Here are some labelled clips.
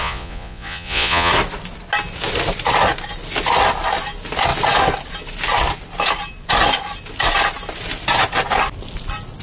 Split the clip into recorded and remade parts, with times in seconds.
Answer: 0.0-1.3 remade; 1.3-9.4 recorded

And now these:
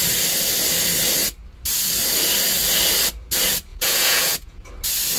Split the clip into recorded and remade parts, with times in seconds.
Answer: 0.0-3.7 recorded; 3.7-4.7 remade; 4.7-5.2 recorded

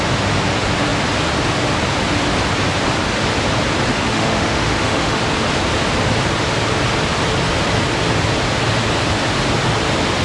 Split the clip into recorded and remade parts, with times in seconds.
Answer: 0.0-3.9 recorded; 3.9-5.2 remade; 5.2-10.2 recorded

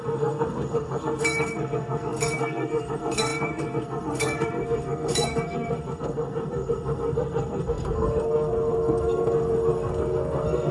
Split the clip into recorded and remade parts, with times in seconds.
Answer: 0.0-10.7 remade

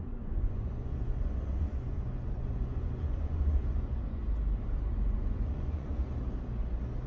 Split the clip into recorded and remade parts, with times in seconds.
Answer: 0.0-4.2 remade; 4.2-4.9 recorded; 4.9-5.9 remade; 5.9-7.1 recorded

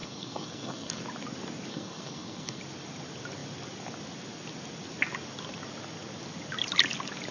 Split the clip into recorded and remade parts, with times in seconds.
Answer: 0.0-1.0 remade; 1.0-1.7 recorded; 1.7-2.6 remade; 2.6-7.3 recorded

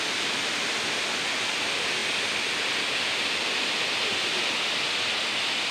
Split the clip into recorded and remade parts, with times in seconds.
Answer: 0.0-5.7 recorded

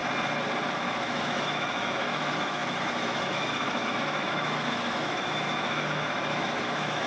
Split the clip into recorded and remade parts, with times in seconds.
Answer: 0.0-0.7 recorded; 0.7-7.1 remade